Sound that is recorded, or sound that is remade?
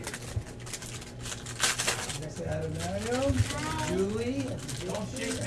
recorded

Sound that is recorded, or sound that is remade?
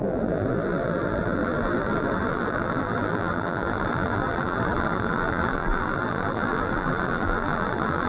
remade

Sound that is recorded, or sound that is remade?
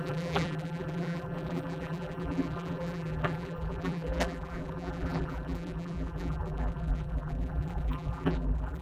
remade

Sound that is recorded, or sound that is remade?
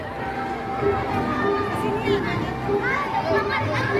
recorded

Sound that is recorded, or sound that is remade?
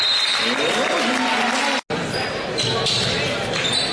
recorded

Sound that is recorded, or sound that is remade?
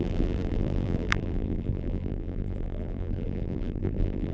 remade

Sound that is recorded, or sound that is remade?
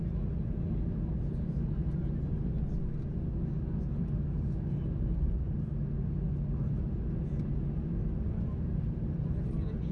recorded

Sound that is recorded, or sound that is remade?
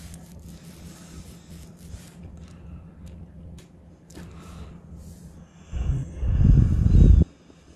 recorded